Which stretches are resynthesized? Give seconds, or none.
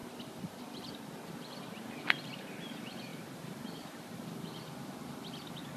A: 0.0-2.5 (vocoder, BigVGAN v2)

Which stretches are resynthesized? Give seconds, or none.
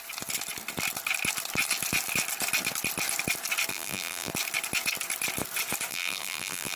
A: 3.7-4.3 (vocoder, BigVGAN v2); 5.9-6.8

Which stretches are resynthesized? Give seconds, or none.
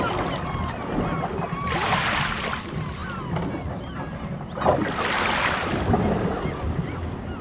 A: none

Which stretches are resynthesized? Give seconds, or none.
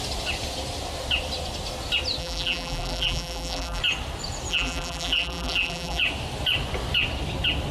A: 2.2-3.8 (vocoder, BigVGAN v2); 4.5-6.0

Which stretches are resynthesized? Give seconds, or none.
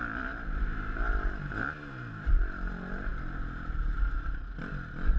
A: none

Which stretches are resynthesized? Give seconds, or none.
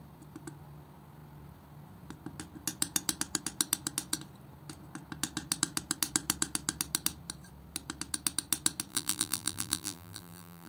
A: 8.9-10.7 (vocoder, BigVGAN v2)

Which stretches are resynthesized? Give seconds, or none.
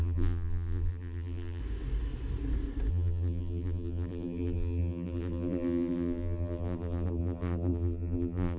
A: 0.0-1.6 (vocoder, BigVGAN v2); 2.9-8.6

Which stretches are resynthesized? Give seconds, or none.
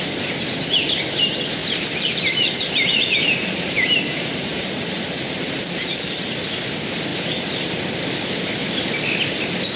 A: 1.6-6.2 (vocoder, BigVGAN v2); 7.1-7.8